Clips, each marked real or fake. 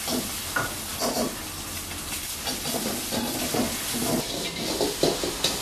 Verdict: real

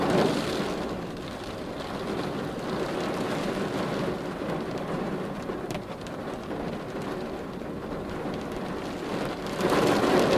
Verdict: real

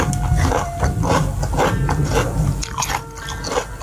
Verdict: real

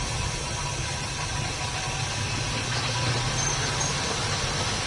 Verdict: real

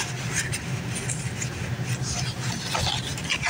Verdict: real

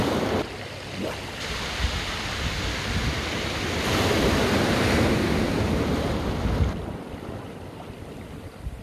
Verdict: real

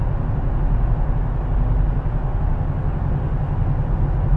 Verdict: real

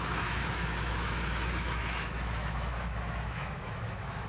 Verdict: fake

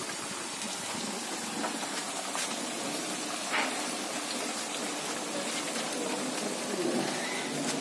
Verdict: real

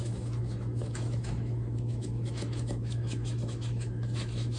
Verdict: fake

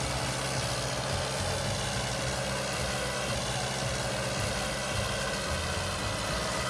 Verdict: real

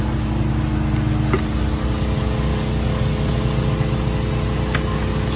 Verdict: real